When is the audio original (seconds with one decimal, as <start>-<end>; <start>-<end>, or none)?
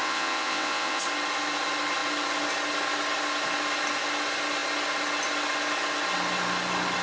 1.0-7.0